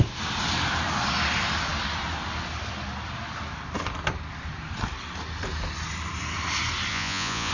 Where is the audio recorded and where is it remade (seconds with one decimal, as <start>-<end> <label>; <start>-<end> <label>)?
0.0-6.9 recorded; 6.9-7.5 remade